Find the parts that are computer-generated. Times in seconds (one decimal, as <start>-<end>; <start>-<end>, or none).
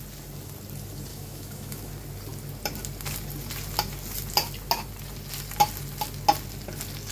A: 1.1-1.9